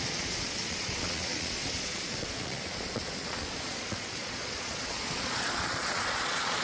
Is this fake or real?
fake